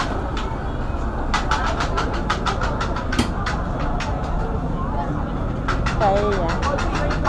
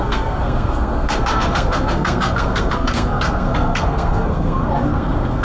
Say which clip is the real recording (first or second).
first